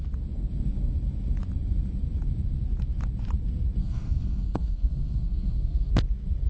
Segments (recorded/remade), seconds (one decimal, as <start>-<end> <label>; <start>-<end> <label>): 0.0-3.8 recorded; 3.8-5.9 remade; 5.9-6.5 recorded